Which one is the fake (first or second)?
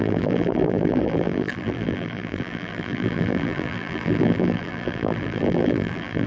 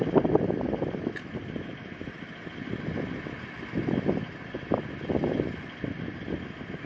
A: first